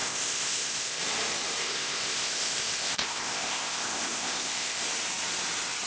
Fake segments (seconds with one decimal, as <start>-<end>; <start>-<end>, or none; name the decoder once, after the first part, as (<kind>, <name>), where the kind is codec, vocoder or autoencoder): 0.0-1.0 (codec, ZipCodec); 1.6-4.8